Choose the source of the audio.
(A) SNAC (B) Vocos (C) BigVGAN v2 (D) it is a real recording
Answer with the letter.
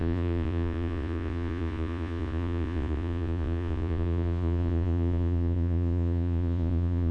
B